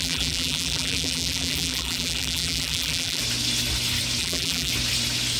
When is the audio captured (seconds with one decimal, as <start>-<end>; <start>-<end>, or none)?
3.2-4.2; 4.7-5.4